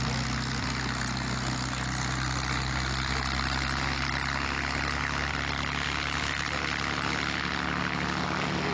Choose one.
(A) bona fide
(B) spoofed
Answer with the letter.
A